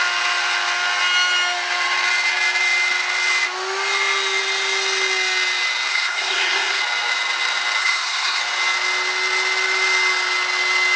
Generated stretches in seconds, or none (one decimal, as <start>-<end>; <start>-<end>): 5.9-6.8; 7.8-8.4